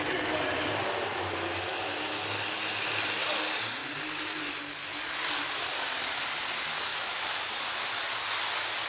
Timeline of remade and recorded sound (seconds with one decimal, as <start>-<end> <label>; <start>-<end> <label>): 0.0-6.9 recorded; 6.9-7.6 remade; 7.6-8.9 recorded